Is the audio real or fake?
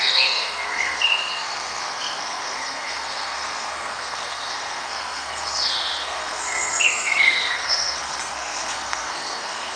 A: fake